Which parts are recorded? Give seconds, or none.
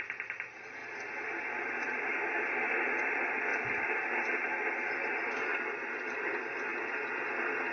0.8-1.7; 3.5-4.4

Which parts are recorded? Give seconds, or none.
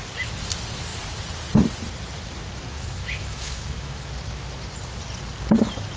0.0-2.7; 4.1-6.0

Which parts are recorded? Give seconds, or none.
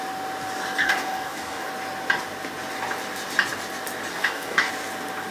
0.0-0.8; 1.7-4.1; 4.7-5.3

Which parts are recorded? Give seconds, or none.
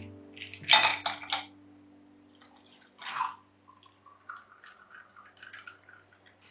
0.0-6.5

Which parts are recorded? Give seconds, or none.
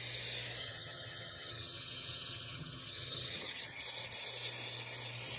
0.0-0.6; 3.8-5.4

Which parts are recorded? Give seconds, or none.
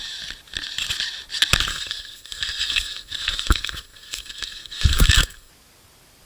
0.0-1.7; 5.5-6.3